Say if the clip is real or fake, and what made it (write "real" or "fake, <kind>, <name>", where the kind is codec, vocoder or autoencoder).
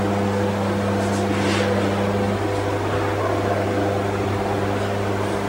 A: real